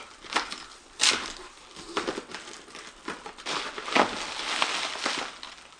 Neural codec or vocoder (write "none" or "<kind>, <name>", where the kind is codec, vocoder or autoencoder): none